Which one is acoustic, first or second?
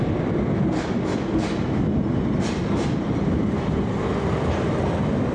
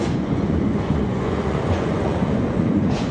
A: first